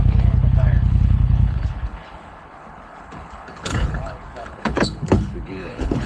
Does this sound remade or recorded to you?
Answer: remade